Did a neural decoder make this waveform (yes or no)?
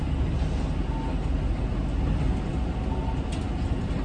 no